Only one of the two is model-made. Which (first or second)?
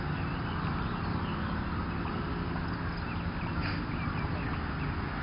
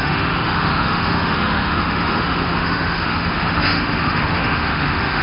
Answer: second